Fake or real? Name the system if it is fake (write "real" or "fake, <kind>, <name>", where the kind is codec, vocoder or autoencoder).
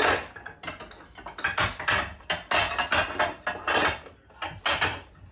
real